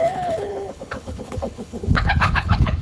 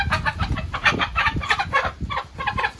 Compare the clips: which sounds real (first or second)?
second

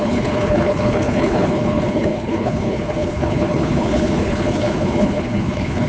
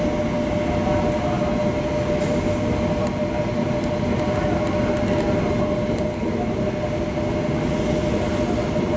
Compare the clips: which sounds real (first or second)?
second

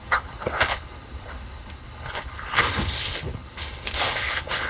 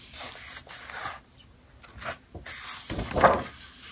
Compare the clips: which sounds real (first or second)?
second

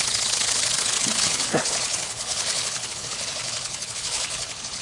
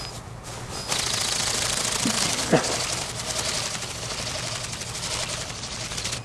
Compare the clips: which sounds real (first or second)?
second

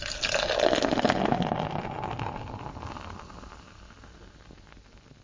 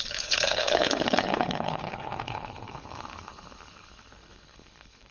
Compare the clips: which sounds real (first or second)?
first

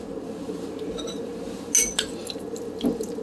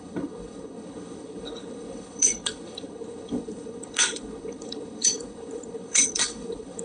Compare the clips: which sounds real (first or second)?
first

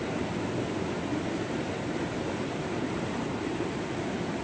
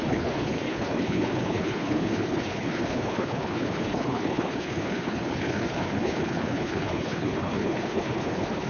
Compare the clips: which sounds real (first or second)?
first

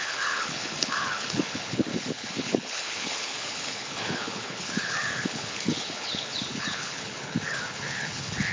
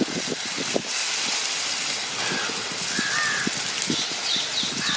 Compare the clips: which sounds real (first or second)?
second